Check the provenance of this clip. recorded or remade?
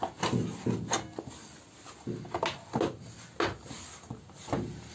recorded